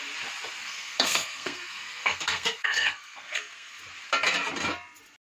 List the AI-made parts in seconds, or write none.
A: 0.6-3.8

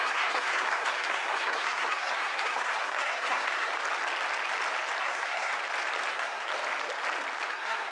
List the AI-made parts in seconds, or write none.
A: 0.0-3.7; 5.0-5.5; 6.1-6.5; 7.5-7.9

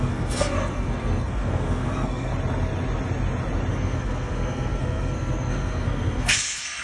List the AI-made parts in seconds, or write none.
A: 0.0-2.3; 3.7-6.8

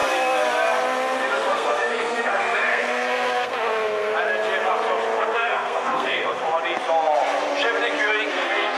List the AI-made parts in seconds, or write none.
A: 1.5-4.1; 5.2-6.2; 8.3-8.8

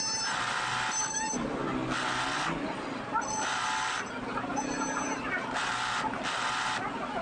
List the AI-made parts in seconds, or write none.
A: none

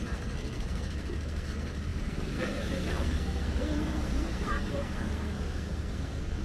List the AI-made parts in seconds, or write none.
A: 0.0-6.4